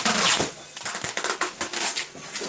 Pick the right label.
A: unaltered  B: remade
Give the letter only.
A